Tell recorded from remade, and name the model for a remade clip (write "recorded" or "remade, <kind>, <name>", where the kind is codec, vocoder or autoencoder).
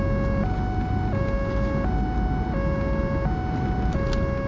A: recorded